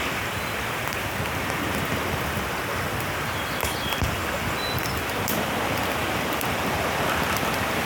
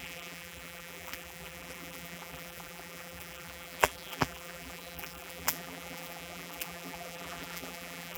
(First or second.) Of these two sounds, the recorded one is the first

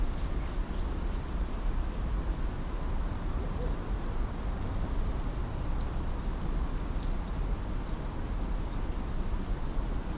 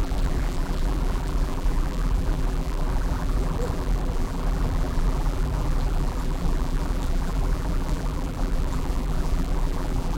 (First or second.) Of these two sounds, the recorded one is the first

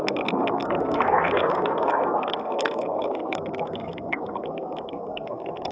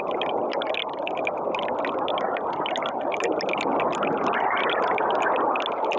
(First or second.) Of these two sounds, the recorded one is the second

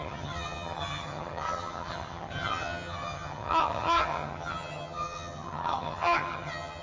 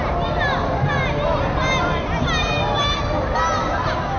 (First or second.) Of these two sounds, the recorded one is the second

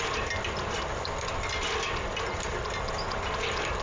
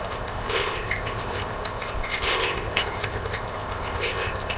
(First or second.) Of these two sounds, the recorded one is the first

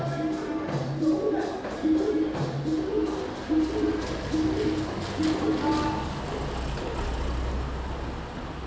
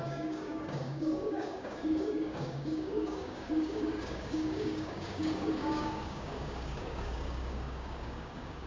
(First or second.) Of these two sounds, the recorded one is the first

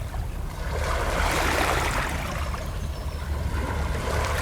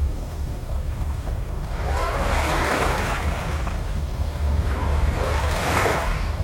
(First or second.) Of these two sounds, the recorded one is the first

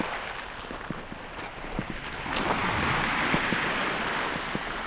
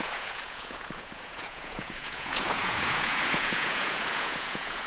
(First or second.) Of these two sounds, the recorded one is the first